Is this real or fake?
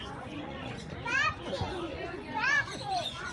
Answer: fake